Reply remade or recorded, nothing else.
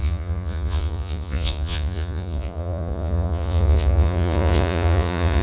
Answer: remade